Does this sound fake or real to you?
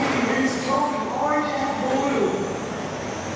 real